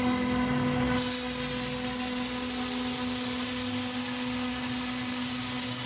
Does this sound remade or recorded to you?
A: recorded